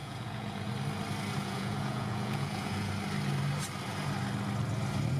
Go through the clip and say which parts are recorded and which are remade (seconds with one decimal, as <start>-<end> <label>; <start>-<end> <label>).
0.0-0.7 remade; 0.7-1.4 recorded; 1.4-2.9 remade; 2.9-5.2 recorded